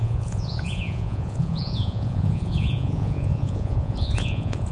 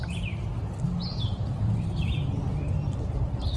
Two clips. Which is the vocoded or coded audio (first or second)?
first